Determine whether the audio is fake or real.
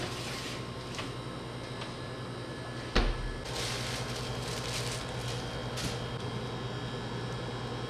real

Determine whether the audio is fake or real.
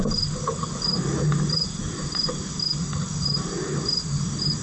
real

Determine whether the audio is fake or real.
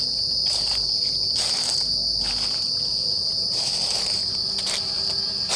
real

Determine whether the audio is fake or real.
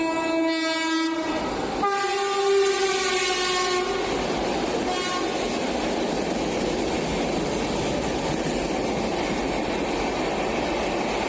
real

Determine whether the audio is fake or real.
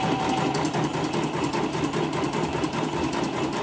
real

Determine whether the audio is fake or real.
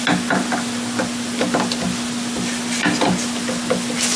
real